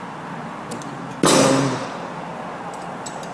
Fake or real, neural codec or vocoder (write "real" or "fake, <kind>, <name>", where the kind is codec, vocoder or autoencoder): real